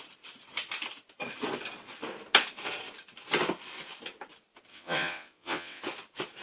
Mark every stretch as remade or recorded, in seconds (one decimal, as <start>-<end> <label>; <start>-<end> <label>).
0.0-4.7 recorded; 4.7-5.8 remade; 5.8-6.4 recorded